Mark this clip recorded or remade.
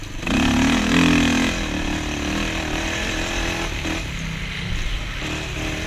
recorded